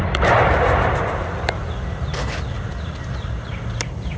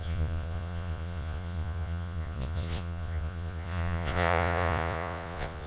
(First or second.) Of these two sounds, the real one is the first